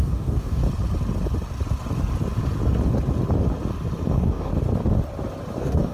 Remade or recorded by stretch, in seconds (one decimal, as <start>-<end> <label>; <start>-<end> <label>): 0.0-0.6 remade; 0.6-4.1 recorded; 4.1-4.5 remade; 4.5-5.5 recorded; 5.5-5.9 remade